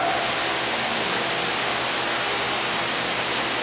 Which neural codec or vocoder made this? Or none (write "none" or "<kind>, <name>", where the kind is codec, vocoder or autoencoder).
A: none